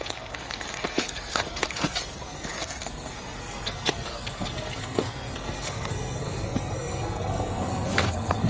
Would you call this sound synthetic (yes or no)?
yes